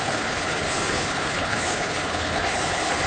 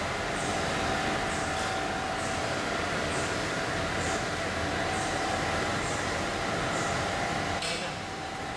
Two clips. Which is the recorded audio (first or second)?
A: second